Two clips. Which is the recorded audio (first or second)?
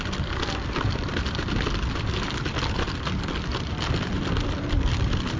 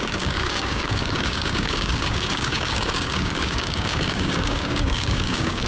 first